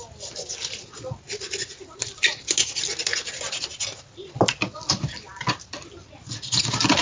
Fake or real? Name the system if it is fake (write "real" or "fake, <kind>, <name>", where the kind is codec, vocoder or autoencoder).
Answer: real